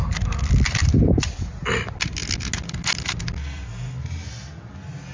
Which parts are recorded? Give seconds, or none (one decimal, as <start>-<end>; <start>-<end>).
0.0-5.1